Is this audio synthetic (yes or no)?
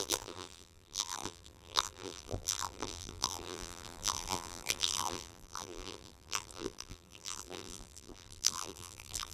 yes